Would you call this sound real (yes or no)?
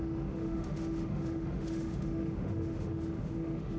no